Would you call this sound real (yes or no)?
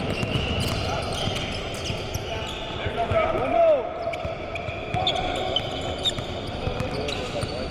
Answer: yes